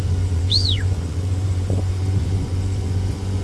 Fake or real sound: fake